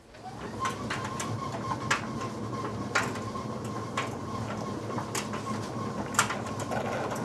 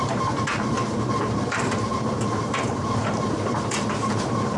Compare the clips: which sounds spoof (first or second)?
second